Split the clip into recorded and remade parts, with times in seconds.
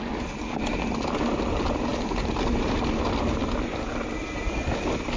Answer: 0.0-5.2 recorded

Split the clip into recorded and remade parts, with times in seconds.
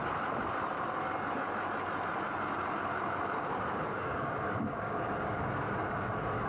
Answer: 0.0-3.4 recorded; 3.4-6.5 remade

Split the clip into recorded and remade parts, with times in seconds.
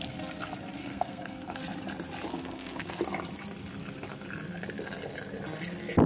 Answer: 0.0-0.8 recorded; 0.8-1.6 remade; 1.6-2.3 recorded; 2.3-3.0 remade; 3.0-6.1 recorded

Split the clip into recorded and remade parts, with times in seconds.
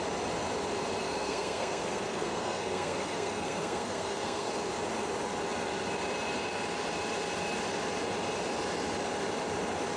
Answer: 0.0-1.0 recorded; 1.0-4.5 remade; 4.5-10.0 recorded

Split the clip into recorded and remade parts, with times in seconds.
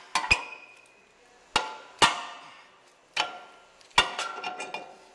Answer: 0.0-5.1 recorded